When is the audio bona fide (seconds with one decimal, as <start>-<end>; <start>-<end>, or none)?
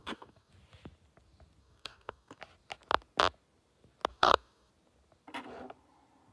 0.5-1.6; 2.4-4.1; 4.7-6.3